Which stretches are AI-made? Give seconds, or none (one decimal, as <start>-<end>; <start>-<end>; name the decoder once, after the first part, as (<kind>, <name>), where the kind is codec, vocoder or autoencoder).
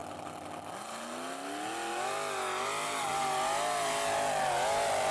none